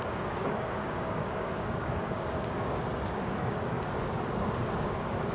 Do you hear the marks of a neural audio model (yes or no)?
yes